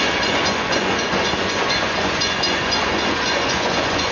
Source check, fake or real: fake